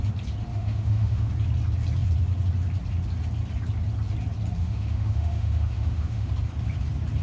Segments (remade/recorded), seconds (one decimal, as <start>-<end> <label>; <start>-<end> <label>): 0.0-0.5 recorded; 0.5-1.3 remade; 1.3-4.6 recorded; 4.6-6.3 remade; 6.3-7.2 recorded